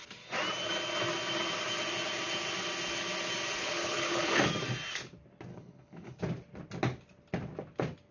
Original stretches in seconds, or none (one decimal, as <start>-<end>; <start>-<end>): 0.0-3.6; 4.4-5.5; 6.2-8.1